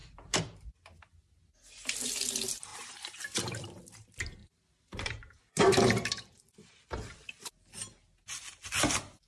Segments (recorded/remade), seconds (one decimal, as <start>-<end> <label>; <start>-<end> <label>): 0.0-0.7 remade; 0.7-2.7 recorded; 2.7-3.8 remade; 3.8-4.4 recorded; 4.4-6.7 remade; 6.7-9.3 recorded